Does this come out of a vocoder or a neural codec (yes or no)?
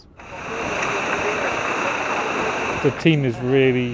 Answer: no